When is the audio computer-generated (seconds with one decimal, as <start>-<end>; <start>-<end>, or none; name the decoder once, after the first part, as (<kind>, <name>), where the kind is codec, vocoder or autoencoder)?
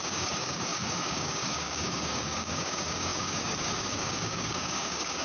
0.0-5.2 (codec, DAC)